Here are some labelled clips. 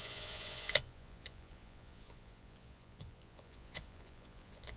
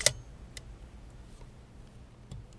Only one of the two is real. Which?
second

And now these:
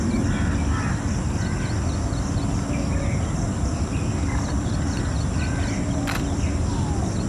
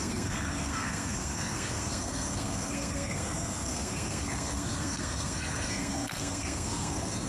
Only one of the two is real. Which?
first